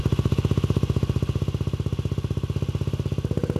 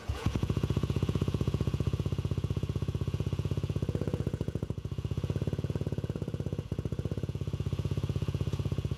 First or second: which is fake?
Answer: second